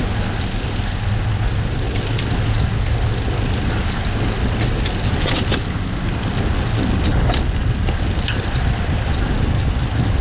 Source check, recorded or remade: recorded